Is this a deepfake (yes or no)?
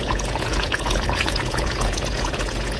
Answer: yes